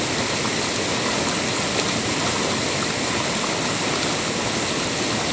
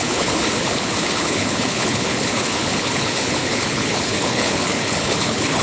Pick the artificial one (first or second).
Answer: second